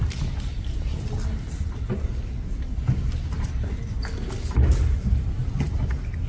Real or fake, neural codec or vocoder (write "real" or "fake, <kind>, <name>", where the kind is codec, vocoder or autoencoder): real